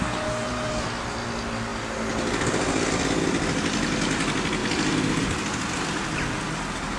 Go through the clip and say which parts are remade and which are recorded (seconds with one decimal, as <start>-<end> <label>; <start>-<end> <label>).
0.0-7.0 recorded